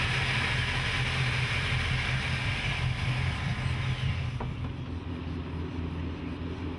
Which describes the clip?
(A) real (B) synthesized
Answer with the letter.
A